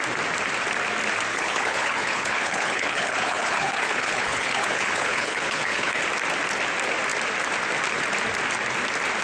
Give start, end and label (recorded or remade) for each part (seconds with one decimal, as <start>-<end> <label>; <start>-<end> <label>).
0.0-1.3 recorded; 1.3-6.0 remade; 6.0-9.2 recorded